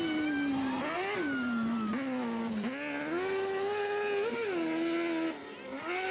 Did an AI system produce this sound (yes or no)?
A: no